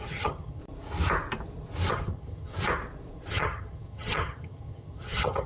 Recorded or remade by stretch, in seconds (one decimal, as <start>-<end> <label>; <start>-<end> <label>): 0.0-0.6 remade; 0.6-1.9 recorded; 1.9-2.5 remade; 2.5-3.3 recorded; 3.3-5.5 remade

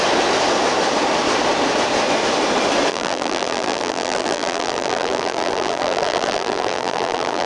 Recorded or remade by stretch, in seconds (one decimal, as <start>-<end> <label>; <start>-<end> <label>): 0.0-2.9 recorded; 2.9-7.5 remade

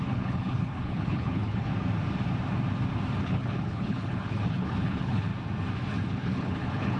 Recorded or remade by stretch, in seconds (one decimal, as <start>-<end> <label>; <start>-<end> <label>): 0.0-1.7 remade; 1.7-3.2 recorded; 3.2-5.3 remade; 5.3-6.1 recorded; 6.1-7.0 remade

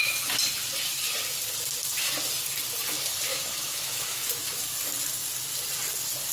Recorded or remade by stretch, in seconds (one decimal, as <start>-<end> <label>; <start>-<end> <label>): 0.0-3.3 recorded; 3.3-4.6 remade; 4.6-6.3 recorded

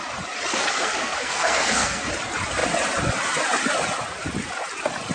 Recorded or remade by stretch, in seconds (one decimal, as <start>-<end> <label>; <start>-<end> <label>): 0.0-0.5 recorded; 0.5-2.1 remade; 2.1-5.1 recorded